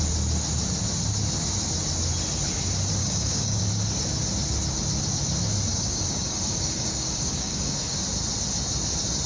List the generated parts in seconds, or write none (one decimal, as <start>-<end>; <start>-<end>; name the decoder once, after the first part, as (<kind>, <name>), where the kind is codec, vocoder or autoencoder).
3.0-3.6 (codec, DAC); 5.7-8.0